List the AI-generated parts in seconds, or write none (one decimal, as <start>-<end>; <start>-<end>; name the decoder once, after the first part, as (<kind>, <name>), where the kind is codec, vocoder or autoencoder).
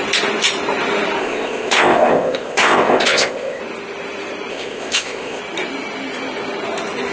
1.2-3.6 (codec, ZipCodec); 4.5-5.4